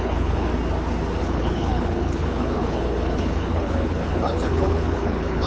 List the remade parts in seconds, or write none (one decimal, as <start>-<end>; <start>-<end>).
0.0-0.5; 1.2-5.5